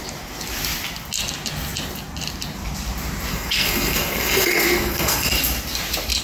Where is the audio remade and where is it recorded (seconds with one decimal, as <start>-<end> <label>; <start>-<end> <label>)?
0.0-3.3 recorded; 3.3-5.3 remade; 5.3-6.2 recorded